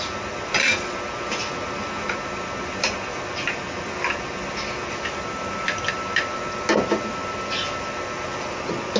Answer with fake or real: real